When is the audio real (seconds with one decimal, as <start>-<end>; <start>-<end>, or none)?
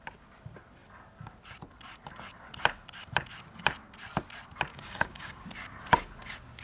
0.0-4.7; 5.4-6.6